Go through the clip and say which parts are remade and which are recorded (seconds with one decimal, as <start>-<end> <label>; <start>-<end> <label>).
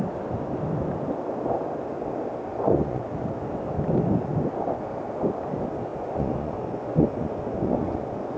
0.0-2.5 recorded; 2.5-3.1 remade; 3.1-5.9 recorded; 5.9-8.4 remade